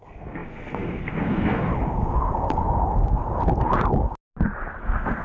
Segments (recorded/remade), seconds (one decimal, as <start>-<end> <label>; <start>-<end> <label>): 0.0-1.7 remade; 1.7-4.8 recorded; 4.8-5.2 remade